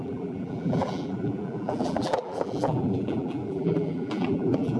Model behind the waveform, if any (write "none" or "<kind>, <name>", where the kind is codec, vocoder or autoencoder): vocoder, BigVGAN v2